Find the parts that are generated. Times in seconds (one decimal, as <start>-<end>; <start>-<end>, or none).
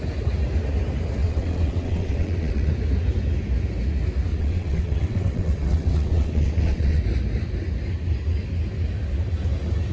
1.2-2.7; 4.3-7.0